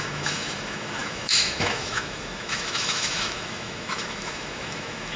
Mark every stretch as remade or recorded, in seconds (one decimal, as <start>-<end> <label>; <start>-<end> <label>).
0.0-5.2 remade